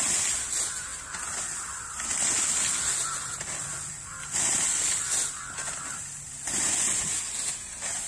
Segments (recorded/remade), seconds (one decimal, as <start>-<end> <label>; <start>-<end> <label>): 0.0-8.1 recorded